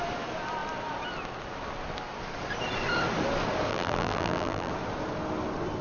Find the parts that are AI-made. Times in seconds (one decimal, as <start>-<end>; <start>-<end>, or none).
3.7-4.7